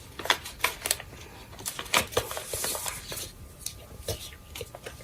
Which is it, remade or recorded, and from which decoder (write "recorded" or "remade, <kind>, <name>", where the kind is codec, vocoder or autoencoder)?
recorded